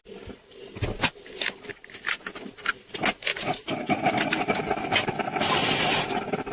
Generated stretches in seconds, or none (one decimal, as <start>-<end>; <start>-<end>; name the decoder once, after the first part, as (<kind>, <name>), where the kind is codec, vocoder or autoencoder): 3.3-4.6 (vocoder, BigVGAN v2)